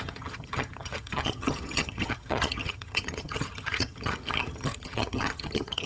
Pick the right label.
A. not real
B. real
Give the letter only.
A